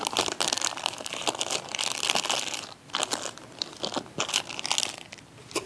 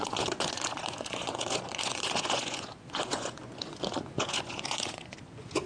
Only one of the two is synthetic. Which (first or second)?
second